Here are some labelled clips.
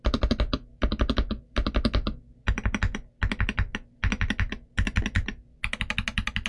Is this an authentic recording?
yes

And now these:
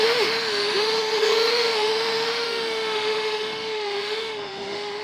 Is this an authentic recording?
no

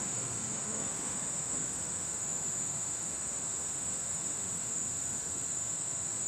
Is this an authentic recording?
no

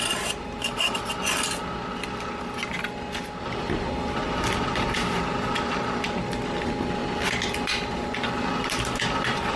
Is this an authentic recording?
yes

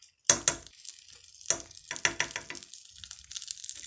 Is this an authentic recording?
yes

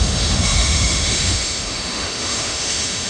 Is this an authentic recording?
no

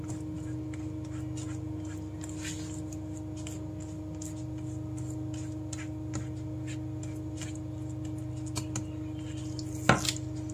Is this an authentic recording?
yes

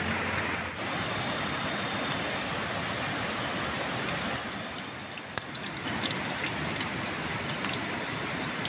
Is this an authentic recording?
yes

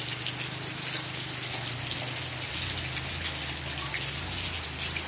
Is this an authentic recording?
yes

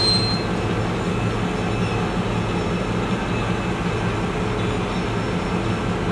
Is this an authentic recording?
yes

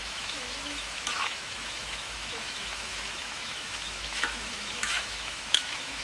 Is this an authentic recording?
no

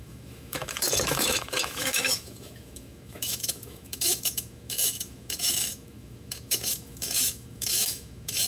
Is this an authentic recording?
no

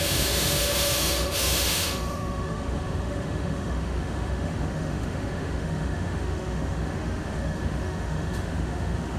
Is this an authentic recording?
no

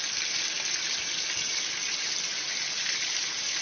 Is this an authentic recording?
yes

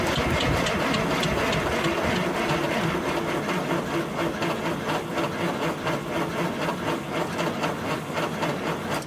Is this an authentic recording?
yes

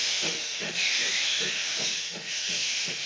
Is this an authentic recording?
no